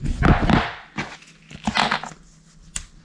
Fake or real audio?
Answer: real